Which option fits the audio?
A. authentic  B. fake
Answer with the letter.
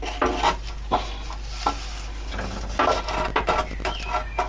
A